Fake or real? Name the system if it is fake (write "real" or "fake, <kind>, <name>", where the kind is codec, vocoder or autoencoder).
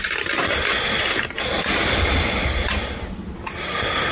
real